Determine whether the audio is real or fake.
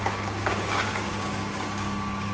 fake